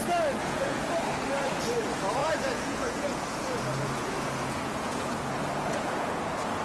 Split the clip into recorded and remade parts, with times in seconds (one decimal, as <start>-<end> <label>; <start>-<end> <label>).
0.0-0.4 recorded; 0.4-0.9 remade; 0.9-2.2 recorded; 2.2-6.6 remade